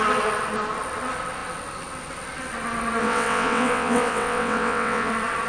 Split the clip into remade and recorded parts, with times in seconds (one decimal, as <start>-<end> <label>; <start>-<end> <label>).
0.0-3.0 recorded; 3.0-5.1 remade; 5.1-5.5 recorded